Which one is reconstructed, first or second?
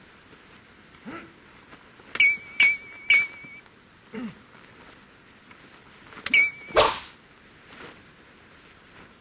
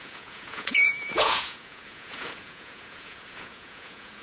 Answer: second